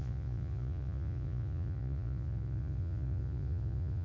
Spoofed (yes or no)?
yes